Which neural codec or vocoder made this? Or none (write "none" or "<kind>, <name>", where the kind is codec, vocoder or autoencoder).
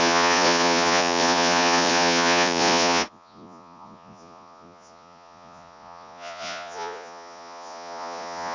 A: vocoder, Vocos